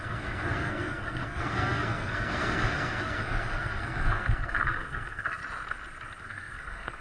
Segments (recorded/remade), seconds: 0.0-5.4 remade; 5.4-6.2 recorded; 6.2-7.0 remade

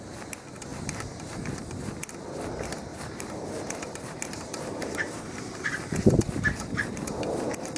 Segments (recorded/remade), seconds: 0.0-0.7 recorded; 0.7-1.9 remade; 1.9-2.9 recorded; 2.9-7.8 remade

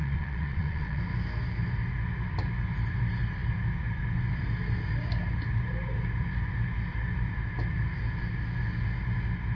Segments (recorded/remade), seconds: 0.0-1.0 remade; 1.0-9.5 recorded

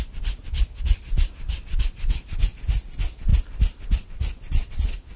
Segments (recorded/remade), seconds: 0.0-5.2 recorded

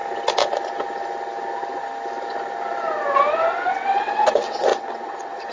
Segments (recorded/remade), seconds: 0.0-3.3 recorded; 3.3-5.5 remade

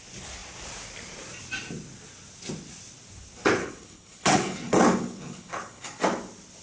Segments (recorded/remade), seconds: 0.0-3.6 recorded; 3.6-6.0 remade; 6.0-6.6 recorded

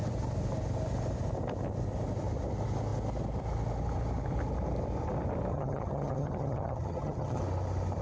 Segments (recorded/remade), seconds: 0.0-5.5 recorded; 5.5-7.4 remade; 7.4-8.0 recorded